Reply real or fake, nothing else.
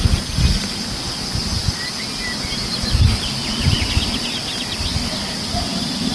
real